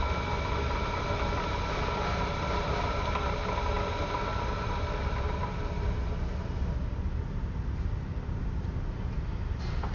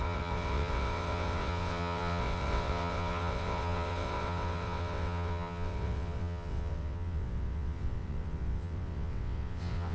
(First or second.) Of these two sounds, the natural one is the first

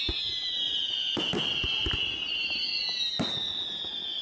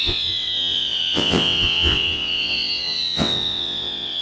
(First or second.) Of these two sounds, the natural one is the first